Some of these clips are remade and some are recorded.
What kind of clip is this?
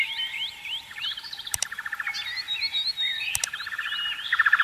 remade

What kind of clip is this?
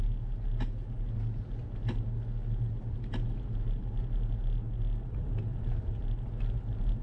recorded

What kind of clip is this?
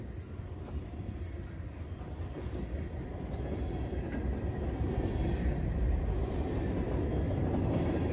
recorded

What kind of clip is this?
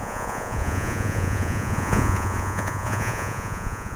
remade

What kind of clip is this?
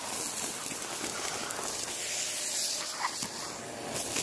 recorded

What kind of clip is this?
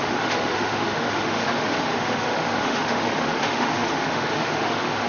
remade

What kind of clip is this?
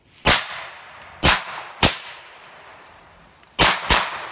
recorded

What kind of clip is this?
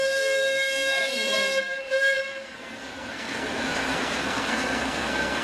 remade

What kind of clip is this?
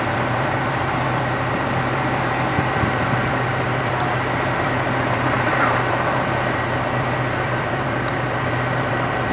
remade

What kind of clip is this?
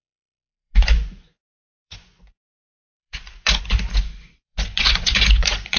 remade